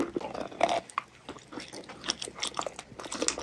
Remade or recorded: recorded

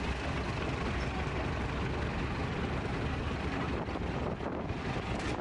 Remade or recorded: recorded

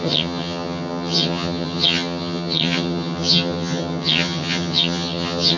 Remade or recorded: remade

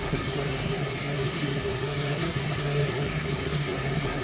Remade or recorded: remade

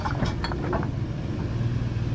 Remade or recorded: recorded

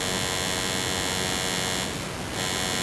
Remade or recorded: recorded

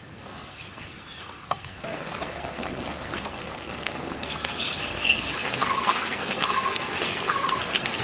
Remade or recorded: remade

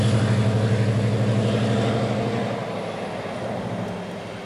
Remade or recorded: recorded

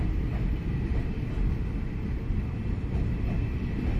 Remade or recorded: recorded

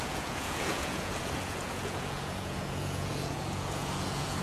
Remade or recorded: remade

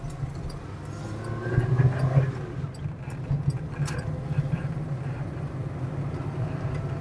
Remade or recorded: recorded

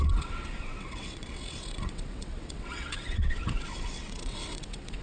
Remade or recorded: remade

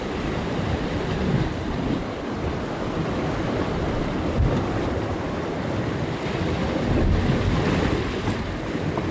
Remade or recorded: recorded